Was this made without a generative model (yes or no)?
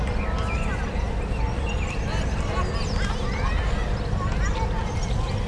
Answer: yes